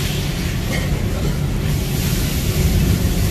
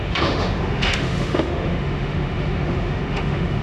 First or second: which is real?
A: first